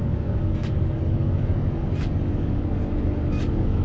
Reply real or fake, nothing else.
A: fake